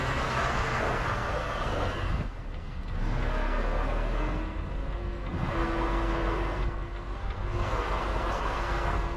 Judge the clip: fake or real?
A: fake